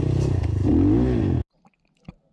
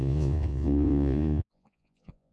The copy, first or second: second